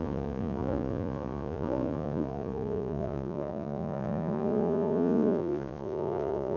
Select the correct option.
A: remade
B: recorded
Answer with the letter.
A